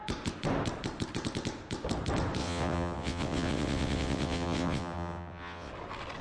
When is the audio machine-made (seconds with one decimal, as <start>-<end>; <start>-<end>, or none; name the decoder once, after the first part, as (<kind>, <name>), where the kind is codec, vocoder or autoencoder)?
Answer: 2.4-5.7 (vocoder, WaveNeXt)